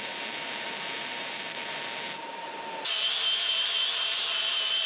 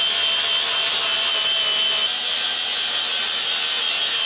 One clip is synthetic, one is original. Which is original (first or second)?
second